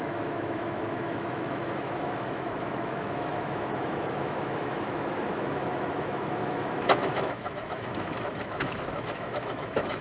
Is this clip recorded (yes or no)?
no